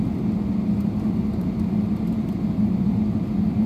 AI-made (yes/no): no